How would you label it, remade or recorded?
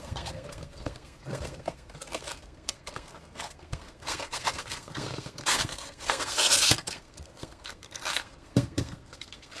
remade